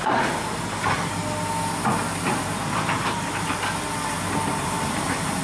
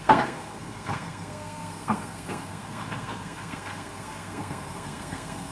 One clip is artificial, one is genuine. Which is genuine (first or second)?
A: first